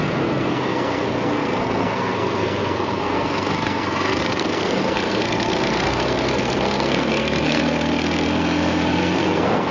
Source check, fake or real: fake